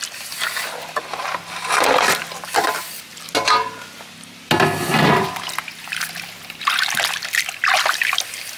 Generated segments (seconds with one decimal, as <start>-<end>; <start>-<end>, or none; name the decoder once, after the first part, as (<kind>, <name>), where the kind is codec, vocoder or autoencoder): none